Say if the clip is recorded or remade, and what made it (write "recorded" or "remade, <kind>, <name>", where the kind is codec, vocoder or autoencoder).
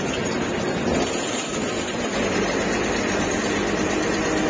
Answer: recorded